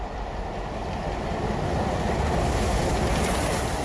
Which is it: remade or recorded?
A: recorded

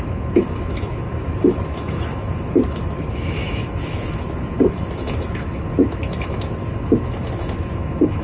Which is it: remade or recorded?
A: remade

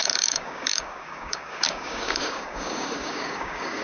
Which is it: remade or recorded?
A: remade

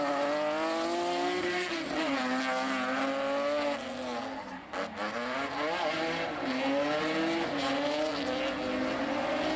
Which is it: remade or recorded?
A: recorded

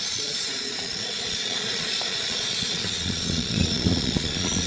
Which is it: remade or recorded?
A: remade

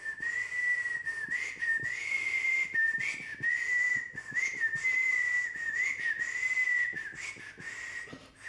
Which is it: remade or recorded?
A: recorded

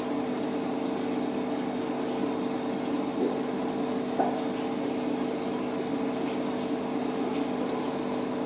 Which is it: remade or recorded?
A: recorded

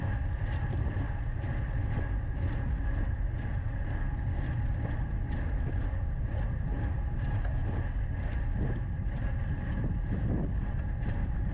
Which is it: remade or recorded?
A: recorded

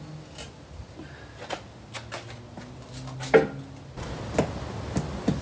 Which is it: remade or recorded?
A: recorded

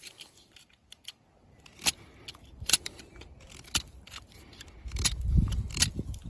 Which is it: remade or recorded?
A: remade